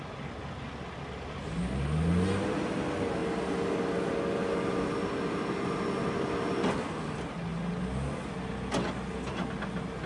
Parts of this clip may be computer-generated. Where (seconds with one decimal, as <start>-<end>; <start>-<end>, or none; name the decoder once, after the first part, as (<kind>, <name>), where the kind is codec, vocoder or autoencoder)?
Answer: none